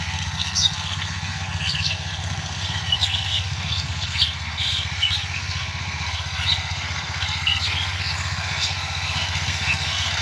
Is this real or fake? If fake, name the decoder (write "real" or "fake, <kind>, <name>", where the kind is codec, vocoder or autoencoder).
fake, codec, SNAC